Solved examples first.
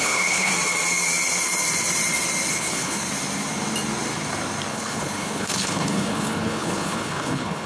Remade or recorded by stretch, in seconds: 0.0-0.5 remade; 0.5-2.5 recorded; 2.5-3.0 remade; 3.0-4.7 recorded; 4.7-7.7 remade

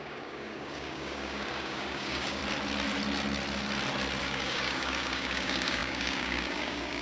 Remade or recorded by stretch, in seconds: 0.0-2.4 remade; 2.4-4.2 recorded; 4.2-7.0 remade

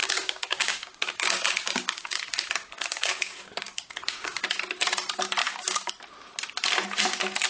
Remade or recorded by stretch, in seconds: 0.0-4.5 remade; 4.5-5.4 recorded; 5.4-5.9 remade; 5.9-7.5 recorded

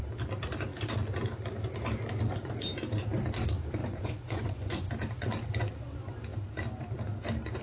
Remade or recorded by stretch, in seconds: 0.0-3.8 recorded; 3.8-4.9 remade; 4.9-7.6 recorded

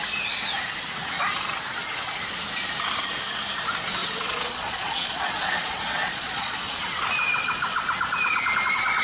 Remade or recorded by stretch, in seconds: 0.0-4.0 recorded; 4.0-6.6 remade; 6.6-9.0 recorded

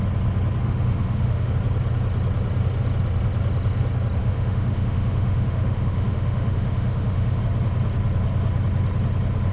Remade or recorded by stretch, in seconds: 0.0-0.6 recorded; 0.6-1.5 remade; 1.5-4.2 recorded; 4.2-7.4 remade; 7.4-9.5 recorded

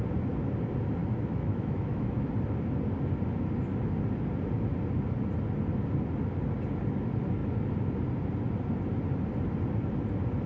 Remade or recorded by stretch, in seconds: 0.0-1.0 recorded; 1.0-2.3 remade; 2.3-10.5 recorded

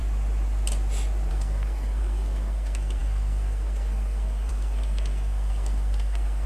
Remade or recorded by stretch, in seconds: 0.0-1.3 recorded; 1.3-6.5 remade